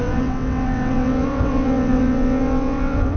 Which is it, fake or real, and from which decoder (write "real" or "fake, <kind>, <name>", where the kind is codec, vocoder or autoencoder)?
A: fake, vocoder, WaveNeXt